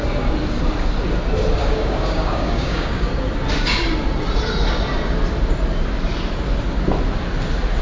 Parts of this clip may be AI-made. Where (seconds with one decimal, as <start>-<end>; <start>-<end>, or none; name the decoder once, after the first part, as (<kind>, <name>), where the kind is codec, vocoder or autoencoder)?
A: 1.6-3.1 (codec, DAC)